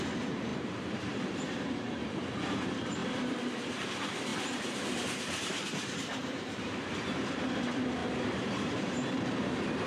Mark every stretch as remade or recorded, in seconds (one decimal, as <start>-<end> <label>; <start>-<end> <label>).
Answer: 0.0-9.9 remade